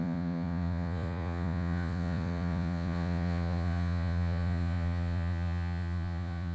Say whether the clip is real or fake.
fake